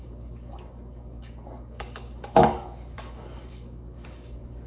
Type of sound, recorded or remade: remade